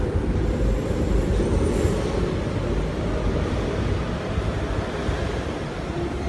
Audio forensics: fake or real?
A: real